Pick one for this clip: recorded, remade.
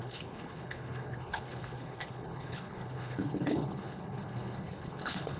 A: remade